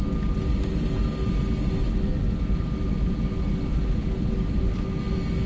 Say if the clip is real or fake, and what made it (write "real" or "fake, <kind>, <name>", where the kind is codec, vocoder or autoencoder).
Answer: real